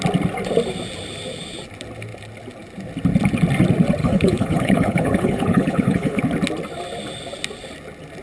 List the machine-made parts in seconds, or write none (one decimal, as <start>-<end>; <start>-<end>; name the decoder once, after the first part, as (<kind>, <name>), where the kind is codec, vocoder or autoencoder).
4.0-6.2 (codec, HILCodec)